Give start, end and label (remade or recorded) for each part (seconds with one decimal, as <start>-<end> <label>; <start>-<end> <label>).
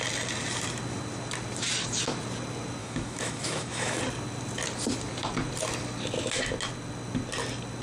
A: 0.0-2.8 recorded; 2.8-4.0 remade; 4.0-7.8 recorded